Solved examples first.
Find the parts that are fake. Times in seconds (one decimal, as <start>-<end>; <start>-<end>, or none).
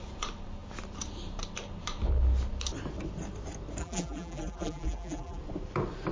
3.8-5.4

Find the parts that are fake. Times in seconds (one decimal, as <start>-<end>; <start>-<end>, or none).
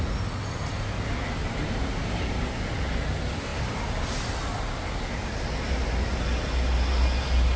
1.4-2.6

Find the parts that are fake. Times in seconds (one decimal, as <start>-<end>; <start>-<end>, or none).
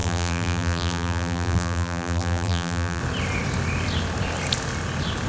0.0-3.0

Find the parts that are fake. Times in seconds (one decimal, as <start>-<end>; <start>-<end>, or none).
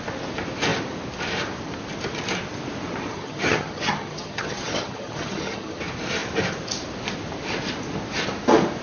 3.1-5.8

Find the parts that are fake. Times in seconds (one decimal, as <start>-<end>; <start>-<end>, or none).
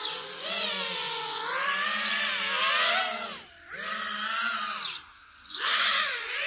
0.0-1.7; 5.2-6.5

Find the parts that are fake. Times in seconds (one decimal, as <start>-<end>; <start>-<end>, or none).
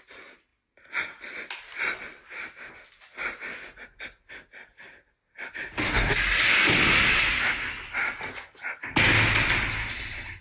2.2-2.7